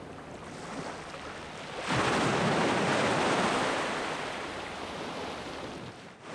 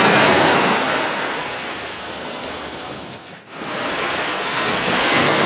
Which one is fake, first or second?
second